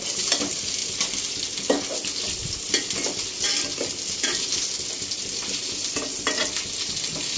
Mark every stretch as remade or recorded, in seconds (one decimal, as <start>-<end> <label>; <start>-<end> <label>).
0.0-7.4 recorded